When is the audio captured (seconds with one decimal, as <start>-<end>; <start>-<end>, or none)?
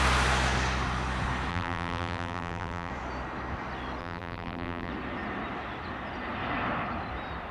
0.0-1.5; 2.9-4.0; 4.9-7.5